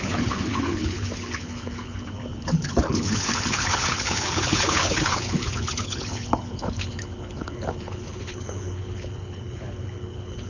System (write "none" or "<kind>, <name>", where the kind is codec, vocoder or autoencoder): codec, HILCodec